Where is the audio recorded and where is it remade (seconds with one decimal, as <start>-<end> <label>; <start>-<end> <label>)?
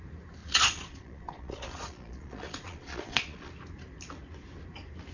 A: 0.0-0.4 recorded; 0.4-3.5 remade; 3.5-5.1 recorded